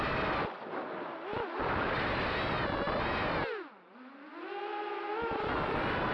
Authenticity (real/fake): real